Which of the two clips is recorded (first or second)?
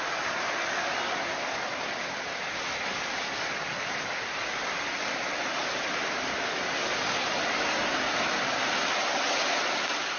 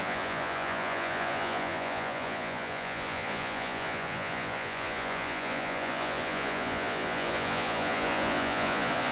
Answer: first